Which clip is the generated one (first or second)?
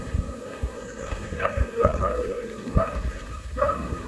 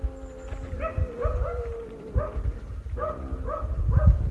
first